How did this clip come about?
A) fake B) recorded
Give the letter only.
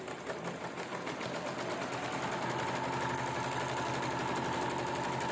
B